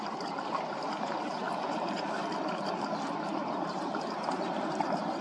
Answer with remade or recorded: remade